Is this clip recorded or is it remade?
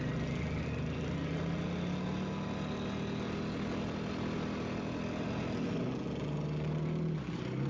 recorded